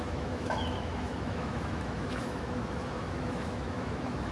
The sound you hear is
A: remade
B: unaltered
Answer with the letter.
A